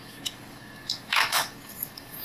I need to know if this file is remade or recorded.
remade